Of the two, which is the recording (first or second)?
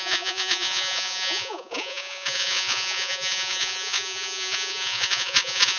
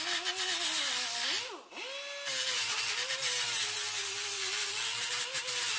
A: second